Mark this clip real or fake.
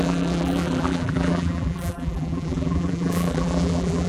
fake